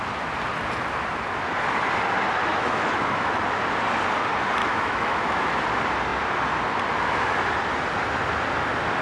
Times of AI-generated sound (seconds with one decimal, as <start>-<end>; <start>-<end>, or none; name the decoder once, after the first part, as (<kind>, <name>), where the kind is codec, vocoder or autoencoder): 2.5-3.4 (autoencoder, DAC-VAE); 4.6-5.6